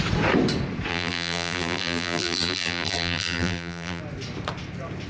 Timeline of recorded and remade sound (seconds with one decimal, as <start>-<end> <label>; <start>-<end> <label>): 0.0-0.9 recorded; 0.9-4.0 remade; 4.0-5.1 recorded